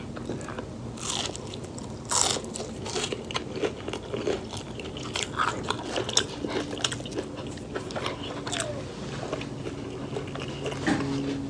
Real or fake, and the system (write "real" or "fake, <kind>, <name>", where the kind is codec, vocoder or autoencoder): real